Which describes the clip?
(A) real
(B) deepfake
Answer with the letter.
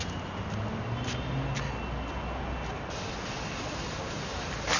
A